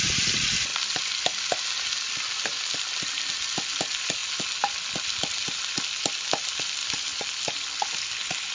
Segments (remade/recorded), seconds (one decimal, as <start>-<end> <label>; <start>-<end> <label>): 0.0-8.5 recorded